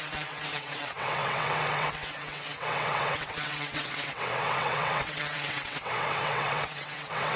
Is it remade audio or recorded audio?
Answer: remade